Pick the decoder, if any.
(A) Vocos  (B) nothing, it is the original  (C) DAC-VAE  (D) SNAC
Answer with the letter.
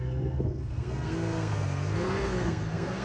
D